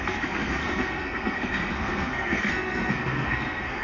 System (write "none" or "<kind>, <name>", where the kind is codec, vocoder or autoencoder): codec, SNAC